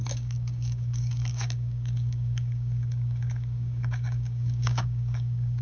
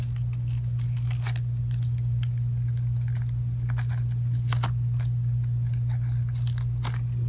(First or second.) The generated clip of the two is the first